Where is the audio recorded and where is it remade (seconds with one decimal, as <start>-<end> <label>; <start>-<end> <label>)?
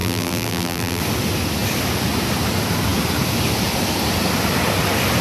0.0-1.0 remade; 1.0-5.2 recorded